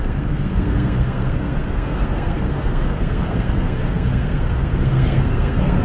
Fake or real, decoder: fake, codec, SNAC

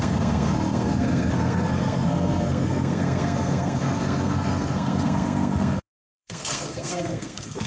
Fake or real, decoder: fake, codec, SNAC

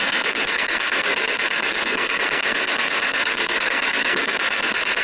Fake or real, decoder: fake, codec, SNAC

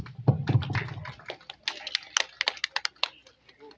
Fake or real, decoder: real